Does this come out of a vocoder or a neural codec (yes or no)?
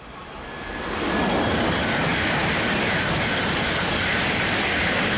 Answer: no